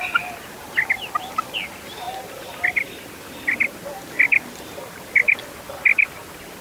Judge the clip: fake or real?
real